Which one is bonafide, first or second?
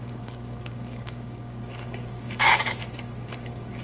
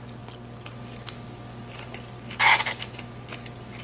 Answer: second